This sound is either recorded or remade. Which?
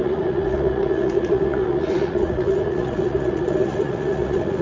remade